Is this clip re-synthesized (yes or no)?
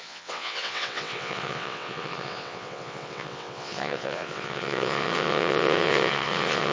yes